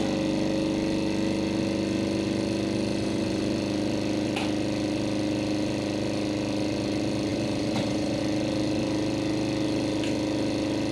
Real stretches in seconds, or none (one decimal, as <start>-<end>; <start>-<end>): 0.0-2.9; 3.4-7.3; 8.2-10.9